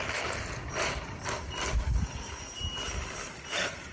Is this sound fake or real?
fake